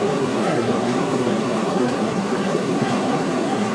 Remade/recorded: remade